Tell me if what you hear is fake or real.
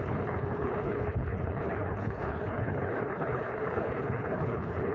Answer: fake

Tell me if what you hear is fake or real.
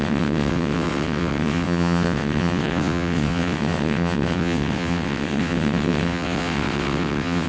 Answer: fake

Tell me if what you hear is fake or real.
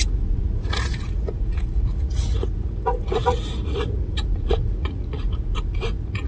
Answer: fake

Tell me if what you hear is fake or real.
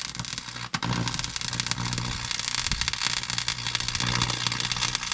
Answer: real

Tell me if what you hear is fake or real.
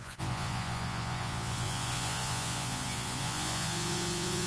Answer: fake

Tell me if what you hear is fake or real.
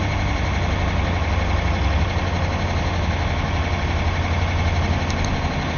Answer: real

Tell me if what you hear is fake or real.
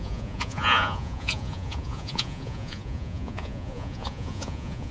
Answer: fake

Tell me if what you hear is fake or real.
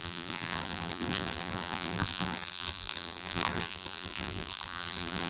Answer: fake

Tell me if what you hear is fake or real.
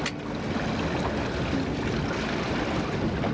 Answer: real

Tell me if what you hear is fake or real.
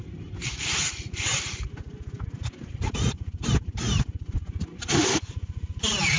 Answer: real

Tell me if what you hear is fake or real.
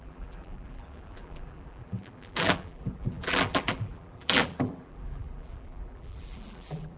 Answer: fake